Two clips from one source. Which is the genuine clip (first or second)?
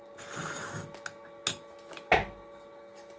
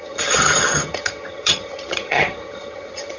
first